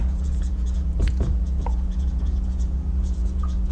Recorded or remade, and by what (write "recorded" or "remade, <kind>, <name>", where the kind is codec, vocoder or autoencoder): remade, vocoder, Vocos